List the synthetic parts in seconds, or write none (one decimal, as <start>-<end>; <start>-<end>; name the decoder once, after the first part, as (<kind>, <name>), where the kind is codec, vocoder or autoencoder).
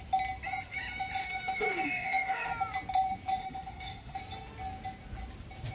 1.2-2.5 (autoencoder, DAC-VAE); 3.4-4.2